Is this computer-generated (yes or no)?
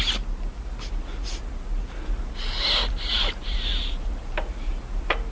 no